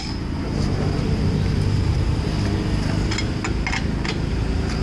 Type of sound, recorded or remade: recorded